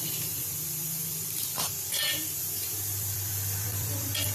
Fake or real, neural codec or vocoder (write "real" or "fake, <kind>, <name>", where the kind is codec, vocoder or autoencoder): fake, vocoder, BigVGAN v2